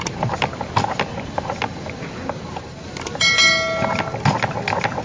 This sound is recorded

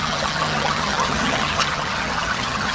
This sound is remade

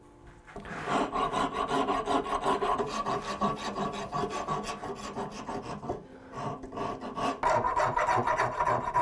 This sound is recorded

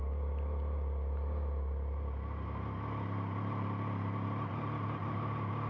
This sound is recorded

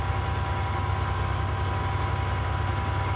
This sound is recorded